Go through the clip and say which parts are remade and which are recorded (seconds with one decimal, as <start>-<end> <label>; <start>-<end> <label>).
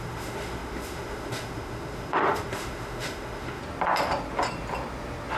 0.0-3.6 remade; 3.6-5.4 recorded